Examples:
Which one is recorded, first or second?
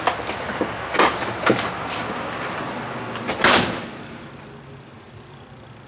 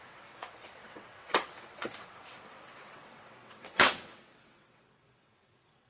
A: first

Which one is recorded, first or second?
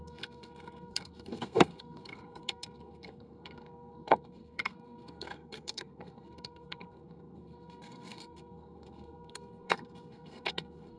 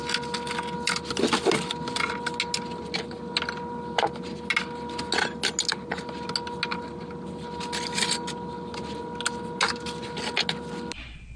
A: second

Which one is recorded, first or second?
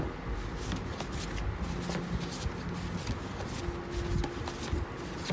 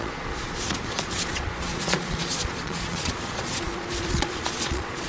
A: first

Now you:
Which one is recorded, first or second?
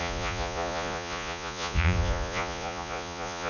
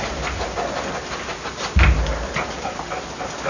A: second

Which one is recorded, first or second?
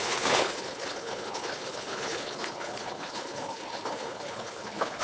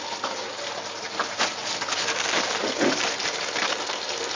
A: second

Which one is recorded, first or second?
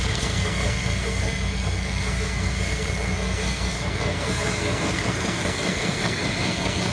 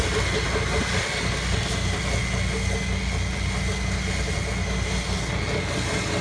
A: second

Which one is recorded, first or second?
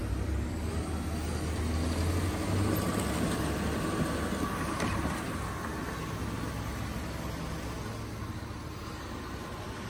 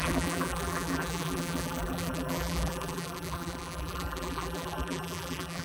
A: first